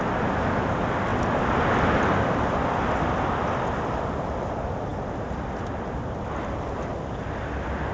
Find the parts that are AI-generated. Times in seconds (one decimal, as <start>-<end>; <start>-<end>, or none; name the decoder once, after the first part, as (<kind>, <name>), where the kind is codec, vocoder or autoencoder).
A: none

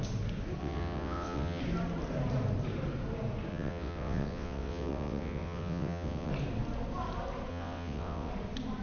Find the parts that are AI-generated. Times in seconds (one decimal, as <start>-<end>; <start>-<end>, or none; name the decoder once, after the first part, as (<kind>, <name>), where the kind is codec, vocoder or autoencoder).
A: 0.6-1.6 (vocoder, WaveNeXt); 3.5-6.3; 7.5-8.3

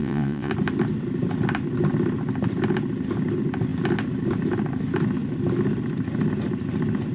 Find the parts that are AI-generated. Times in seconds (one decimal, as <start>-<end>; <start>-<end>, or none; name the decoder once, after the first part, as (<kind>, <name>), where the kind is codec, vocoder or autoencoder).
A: 0.0-0.5 (vocoder, WaveNeXt)